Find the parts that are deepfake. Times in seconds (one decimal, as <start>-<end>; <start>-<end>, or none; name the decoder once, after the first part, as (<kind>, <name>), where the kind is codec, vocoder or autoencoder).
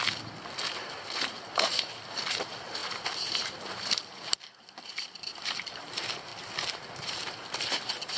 0.7-6.3 (vocoder, BigVGAN v2); 7.0-8.2